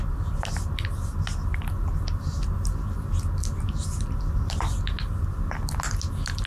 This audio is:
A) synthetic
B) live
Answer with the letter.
B